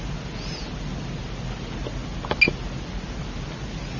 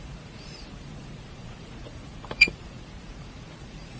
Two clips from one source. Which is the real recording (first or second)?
first